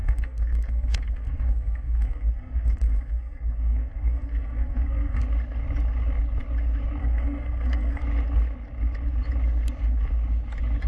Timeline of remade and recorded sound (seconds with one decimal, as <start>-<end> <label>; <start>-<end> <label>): 0.0-5.2 remade; 5.2-7.0 recorded; 7.0-8.0 remade; 8.0-10.9 recorded